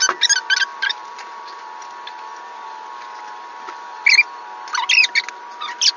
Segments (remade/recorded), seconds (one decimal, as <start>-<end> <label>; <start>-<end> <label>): 0.0-0.7 recorded; 0.7-1.6 remade; 1.6-6.0 recorded